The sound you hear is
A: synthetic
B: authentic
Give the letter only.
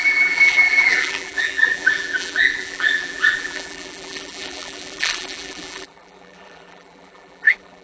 A